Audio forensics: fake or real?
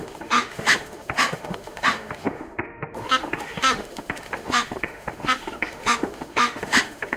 fake